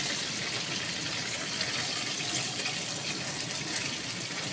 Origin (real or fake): real